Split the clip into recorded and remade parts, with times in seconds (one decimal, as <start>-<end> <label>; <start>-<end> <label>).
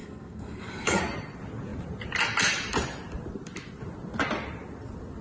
0.0-1.0 remade; 1.0-5.2 recorded